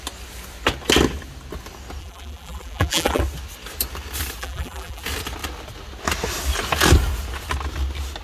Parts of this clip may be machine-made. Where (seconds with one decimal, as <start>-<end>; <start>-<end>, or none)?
2.0-3.2; 4.4-5.0